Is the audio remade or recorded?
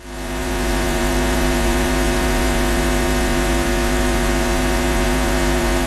remade